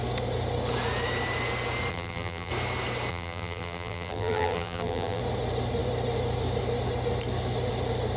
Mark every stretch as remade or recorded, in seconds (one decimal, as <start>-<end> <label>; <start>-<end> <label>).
0.0-1.9 recorded; 1.9-2.5 remade; 2.5-3.1 recorded; 3.1-5.2 remade; 5.2-8.2 recorded